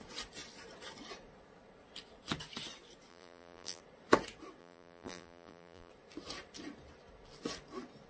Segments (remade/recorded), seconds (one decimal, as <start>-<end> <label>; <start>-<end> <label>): 0.0-3.1 recorded; 3.1-3.8 remade; 3.8-4.6 recorded; 4.6-5.9 remade; 5.9-8.1 recorded